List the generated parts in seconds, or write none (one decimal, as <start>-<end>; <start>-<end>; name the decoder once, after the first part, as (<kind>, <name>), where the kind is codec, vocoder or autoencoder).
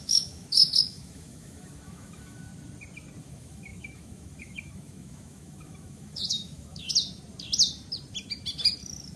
0.0-2.5 (autoencoder, DAC-VAE); 3.2-6.9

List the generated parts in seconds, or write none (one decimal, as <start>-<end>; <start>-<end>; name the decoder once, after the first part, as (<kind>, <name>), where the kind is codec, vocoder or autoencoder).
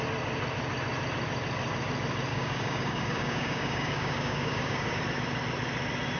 2.3-5.0 (codec, DAC)